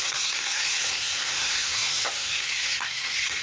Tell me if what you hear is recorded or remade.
remade